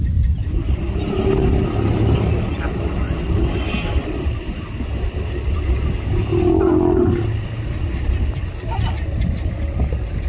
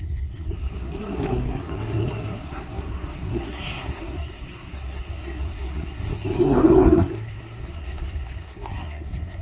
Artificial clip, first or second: second